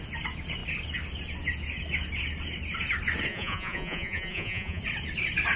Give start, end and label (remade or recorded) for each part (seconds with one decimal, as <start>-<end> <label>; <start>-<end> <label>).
0.0-3.3 recorded; 3.3-4.8 remade; 4.8-5.6 recorded